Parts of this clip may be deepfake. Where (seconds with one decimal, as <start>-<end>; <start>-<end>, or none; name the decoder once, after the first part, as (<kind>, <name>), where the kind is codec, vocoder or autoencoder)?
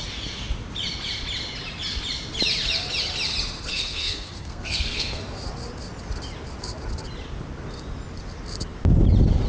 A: 3.7-5.2 (codec, SNAC)